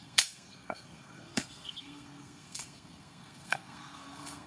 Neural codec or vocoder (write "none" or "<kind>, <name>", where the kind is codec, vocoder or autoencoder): codec, SNAC